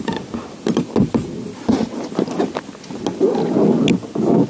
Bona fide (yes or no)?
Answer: yes